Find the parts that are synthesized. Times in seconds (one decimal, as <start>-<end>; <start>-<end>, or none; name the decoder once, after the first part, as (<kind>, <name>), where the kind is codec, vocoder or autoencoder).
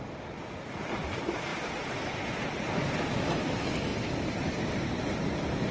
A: none